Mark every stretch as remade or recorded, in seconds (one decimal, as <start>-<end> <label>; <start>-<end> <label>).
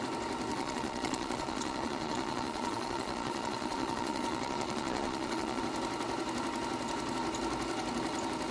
0.0-0.5 recorded; 0.5-5.6 remade; 5.6-8.5 recorded